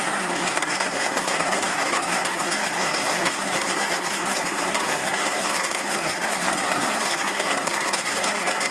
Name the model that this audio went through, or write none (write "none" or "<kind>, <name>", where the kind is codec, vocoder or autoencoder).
codec, SNAC